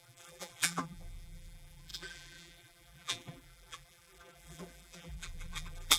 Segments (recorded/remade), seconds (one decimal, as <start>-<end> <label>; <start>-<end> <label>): 0.0-6.0 remade